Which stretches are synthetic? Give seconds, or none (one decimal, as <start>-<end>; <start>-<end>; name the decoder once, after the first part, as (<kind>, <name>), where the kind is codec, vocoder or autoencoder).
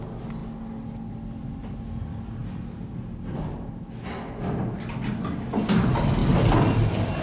6.2-6.7 (vocoder, BigVGAN v2)